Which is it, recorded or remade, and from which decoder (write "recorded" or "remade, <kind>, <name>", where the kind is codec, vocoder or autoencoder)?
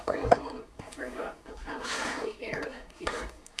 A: remade, codec, SNAC